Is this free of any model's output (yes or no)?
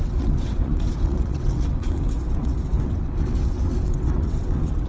no